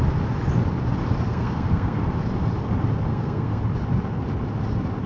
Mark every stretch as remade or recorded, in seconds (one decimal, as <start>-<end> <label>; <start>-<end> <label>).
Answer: 0.0-1.3 recorded; 1.3-2.0 remade; 2.0-3.1 recorded; 3.1-3.6 remade; 3.6-5.1 recorded